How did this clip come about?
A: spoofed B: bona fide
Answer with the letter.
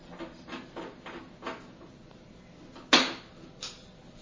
B